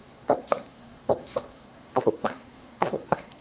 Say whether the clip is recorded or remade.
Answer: remade